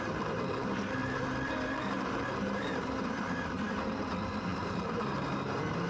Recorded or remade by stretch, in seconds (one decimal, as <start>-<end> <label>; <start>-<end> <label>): 0.0-5.9 remade